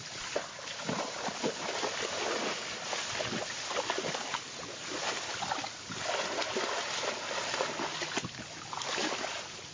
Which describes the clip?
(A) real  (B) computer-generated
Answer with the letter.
A